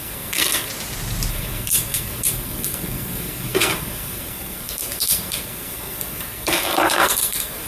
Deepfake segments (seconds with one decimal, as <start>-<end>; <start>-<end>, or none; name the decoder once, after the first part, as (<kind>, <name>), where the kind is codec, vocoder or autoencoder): 0.0-0.7 (codec, SNAC); 1.3-7.7